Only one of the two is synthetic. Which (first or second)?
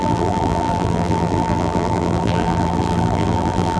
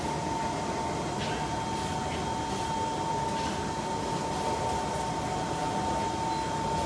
first